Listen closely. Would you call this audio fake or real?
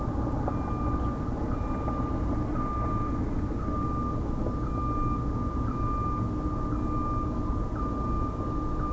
real